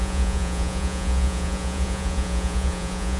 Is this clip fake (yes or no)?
yes